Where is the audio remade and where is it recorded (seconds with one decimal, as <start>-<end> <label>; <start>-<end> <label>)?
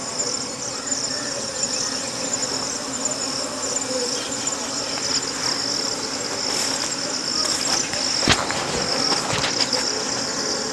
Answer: 0.0-10.7 recorded